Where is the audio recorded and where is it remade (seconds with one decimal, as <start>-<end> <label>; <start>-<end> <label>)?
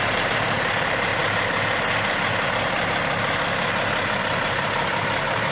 0.0-1.1 remade; 1.1-4.4 recorded; 4.4-5.5 remade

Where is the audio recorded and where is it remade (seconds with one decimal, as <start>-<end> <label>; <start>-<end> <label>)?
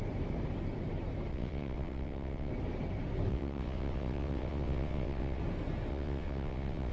0.0-1.3 recorded; 1.3-2.5 remade; 2.5-3.3 recorded; 3.3-5.4 remade; 5.4-5.9 recorded; 5.9-6.9 remade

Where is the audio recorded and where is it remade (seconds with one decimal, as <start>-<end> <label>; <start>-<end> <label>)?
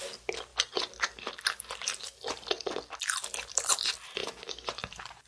0.0-4.2 recorded; 4.2-5.3 remade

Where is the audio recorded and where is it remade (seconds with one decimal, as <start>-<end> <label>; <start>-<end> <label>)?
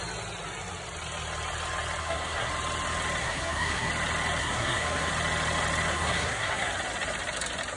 0.0-2.0 recorded; 2.0-2.5 remade; 2.5-3.2 recorded; 3.2-3.9 remade; 3.9-4.4 recorded; 4.4-5.1 remade; 5.1-5.9 recorded; 5.9-6.7 remade; 6.7-7.8 recorded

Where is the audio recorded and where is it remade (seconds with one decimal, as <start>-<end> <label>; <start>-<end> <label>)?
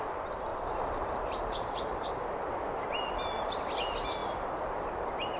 0.0-0.5 recorded; 0.5-2.1 remade; 2.1-5.4 recorded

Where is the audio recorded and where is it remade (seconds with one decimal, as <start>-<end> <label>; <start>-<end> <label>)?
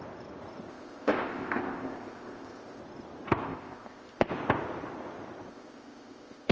0.0-0.7 recorded; 0.7-2.8 remade; 2.8-3.4 recorded; 3.4-4.3 remade; 4.3-5.5 recorded; 5.5-6.5 remade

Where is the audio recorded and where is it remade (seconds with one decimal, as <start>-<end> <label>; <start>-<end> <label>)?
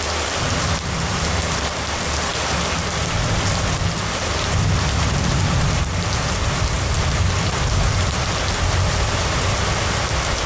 0.0-10.5 recorded